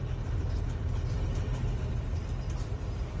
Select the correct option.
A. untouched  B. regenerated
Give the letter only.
A